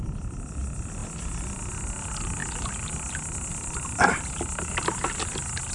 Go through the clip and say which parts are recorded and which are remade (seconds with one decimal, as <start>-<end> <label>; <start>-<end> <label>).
0.0-5.7 recorded